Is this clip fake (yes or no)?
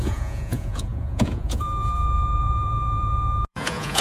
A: yes